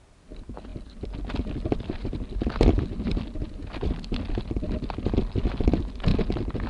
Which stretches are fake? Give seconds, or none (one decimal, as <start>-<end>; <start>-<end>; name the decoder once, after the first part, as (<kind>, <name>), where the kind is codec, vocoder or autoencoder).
none